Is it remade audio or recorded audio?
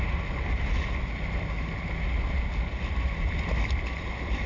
recorded